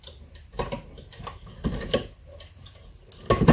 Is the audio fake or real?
real